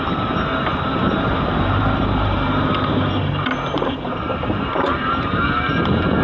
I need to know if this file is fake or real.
fake